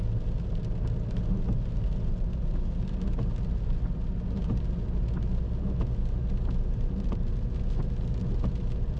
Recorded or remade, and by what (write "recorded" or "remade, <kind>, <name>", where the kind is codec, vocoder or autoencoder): recorded